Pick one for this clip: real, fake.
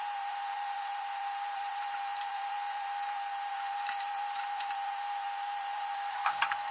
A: fake